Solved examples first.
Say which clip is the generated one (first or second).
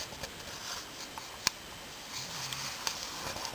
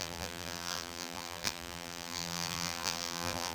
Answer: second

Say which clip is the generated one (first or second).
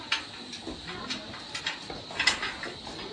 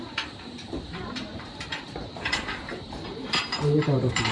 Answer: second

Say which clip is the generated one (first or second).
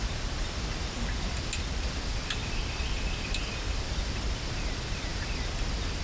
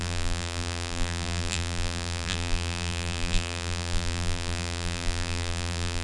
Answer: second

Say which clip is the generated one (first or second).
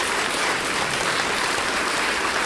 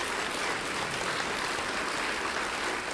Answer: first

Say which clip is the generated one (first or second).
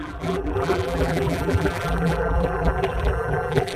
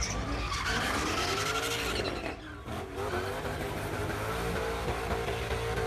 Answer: first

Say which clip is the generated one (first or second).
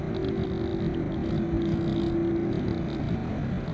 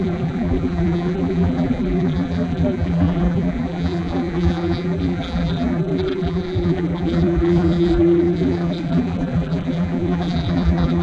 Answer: second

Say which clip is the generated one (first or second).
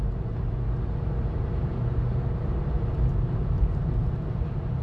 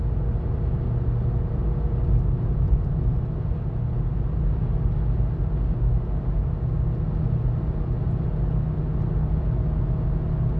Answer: first